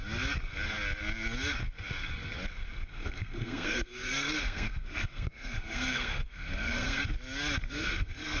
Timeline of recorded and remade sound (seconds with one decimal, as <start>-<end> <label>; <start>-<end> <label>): 0.0-2.5 recorded; 2.5-7.0 remade; 7.0-7.7 recorded; 7.7-8.4 remade